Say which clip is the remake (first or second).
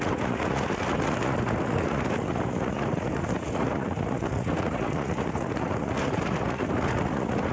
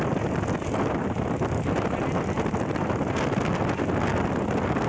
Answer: first